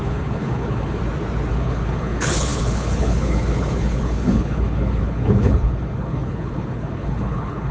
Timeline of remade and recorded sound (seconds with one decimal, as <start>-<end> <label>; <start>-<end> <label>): 0.0-1.0 remade; 1.0-1.5 recorded; 1.5-7.7 remade